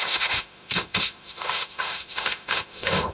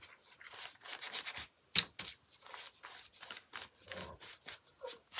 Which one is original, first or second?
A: second